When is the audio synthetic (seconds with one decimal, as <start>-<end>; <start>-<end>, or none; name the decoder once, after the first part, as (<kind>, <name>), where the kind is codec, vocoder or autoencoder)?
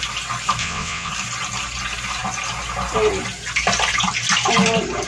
0.6-1.1 (vocoder, WaveNeXt)